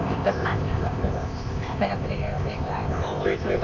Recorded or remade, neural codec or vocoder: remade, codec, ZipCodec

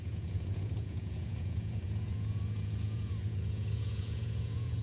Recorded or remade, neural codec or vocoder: remade, vocoder, Vocos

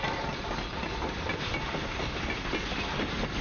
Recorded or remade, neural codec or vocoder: recorded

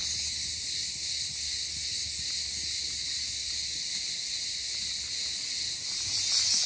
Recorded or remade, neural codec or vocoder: recorded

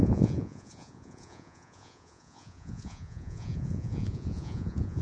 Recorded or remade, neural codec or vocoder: remade, vocoder, Vocos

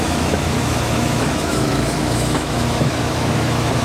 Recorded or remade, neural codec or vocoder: remade, autoencoder, DAC-VAE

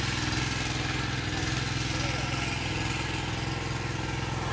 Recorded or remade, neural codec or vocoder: recorded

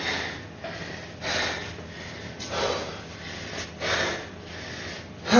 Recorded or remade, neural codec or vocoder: recorded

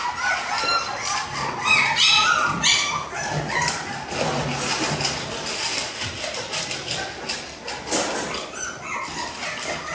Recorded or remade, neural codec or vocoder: recorded